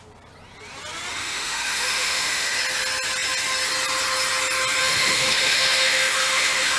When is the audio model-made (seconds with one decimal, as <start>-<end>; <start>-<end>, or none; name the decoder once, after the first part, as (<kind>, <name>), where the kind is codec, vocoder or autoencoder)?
1.1-2.6 (autoencoder, DAC-VAE); 4.8-6.8